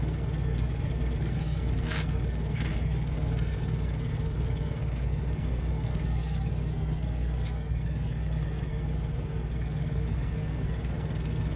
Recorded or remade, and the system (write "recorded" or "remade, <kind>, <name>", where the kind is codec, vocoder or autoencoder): remade, codec, SNAC